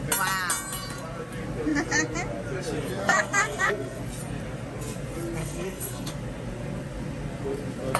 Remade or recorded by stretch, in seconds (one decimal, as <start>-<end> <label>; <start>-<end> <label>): 0.0-3.0 recorded; 3.0-4.0 remade; 4.0-5.4 recorded; 5.4-6.1 remade; 6.1-8.0 recorded